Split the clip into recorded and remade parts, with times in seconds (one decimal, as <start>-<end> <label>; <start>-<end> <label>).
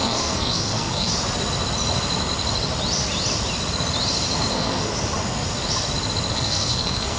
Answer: 0.0-1.1 remade; 1.1-4.5 recorded; 4.5-4.9 remade; 4.9-6.3 recorded; 6.3-7.2 remade